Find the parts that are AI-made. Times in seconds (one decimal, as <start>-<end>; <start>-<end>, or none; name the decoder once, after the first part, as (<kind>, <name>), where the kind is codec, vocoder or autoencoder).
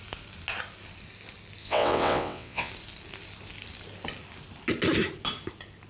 1.6-2.7 (vocoder, WaveNeXt)